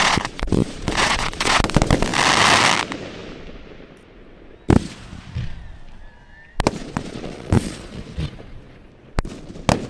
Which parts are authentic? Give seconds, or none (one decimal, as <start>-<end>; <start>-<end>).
1.6-6.8; 8.9-9.9